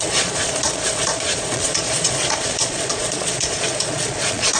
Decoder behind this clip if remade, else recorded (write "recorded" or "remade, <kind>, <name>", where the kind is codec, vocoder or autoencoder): remade, vocoder, Vocos